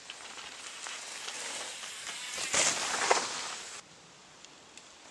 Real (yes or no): yes